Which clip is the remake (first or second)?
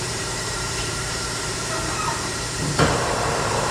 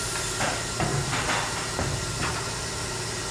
first